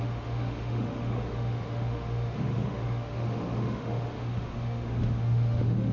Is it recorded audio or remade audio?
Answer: remade